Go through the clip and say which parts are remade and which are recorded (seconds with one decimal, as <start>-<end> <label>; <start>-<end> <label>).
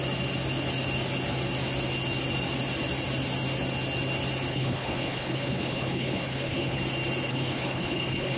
0.0-4.5 recorded; 4.5-6.8 remade; 6.8-7.3 recorded; 7.3-8.4 remade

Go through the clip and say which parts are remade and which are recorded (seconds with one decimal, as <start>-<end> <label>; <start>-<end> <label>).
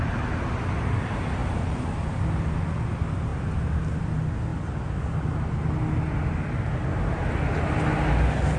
0.0-8.6 recorded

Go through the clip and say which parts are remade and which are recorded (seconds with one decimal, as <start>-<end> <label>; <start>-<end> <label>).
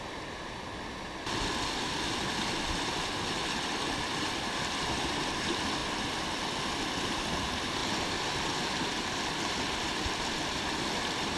0.0-11.4 recorded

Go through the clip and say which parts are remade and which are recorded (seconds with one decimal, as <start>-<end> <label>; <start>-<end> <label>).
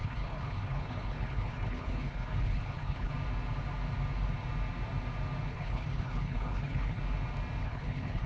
0.0-3.1 remade; 3.1-5.5 recorded; 5.5-7.0 remade; 7.0-7.6 recorded; 7.6-8.3 remade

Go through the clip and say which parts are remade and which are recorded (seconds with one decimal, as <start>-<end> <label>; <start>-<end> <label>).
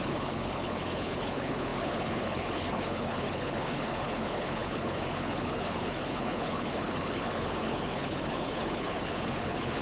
0.0-9.8 remade